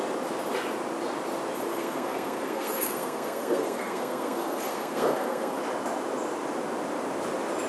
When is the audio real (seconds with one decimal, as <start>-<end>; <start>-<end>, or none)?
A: 0.0-1.7; 5.6-7.7